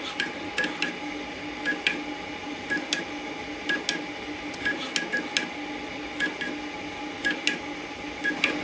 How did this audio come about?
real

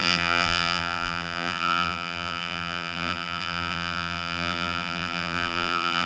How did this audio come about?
fake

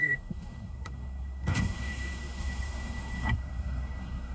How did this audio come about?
fake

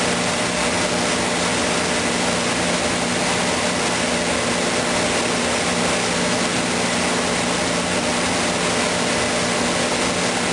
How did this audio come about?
real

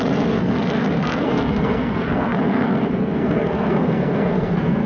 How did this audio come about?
fake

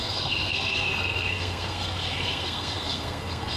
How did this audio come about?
fake